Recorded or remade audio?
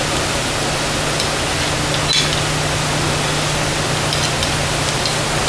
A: recorded